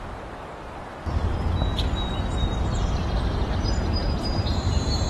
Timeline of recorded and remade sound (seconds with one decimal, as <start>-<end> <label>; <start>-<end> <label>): 0.0-0.9 remade; 0.9-2.6 recorded; 2.6-5.1 remade